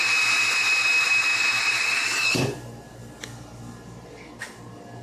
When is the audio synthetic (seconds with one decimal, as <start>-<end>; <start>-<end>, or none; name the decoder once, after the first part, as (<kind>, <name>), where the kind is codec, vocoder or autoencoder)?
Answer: none